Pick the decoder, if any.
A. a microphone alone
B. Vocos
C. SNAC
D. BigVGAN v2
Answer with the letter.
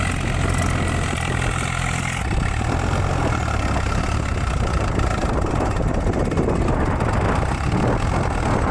A